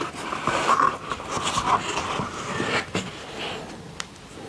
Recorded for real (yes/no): yes